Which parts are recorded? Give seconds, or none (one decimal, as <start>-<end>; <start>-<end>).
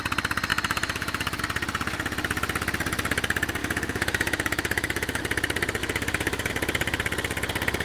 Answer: 0.0-0.5; 1.4-3.6; 5.2-5.8; 6.5-7.8